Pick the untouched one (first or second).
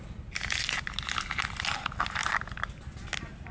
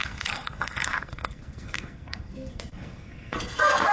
first